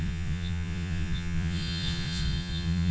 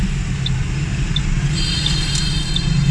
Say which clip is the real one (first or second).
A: second